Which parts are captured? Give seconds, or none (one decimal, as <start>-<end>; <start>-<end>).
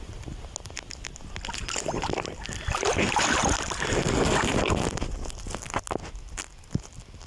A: 0.0-7.3